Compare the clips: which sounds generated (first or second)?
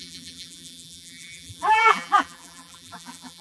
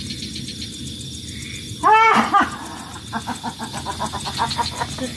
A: first